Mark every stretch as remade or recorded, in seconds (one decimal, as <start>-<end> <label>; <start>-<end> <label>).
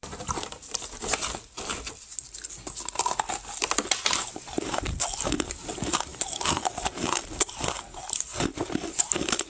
0.0-9.5 recorded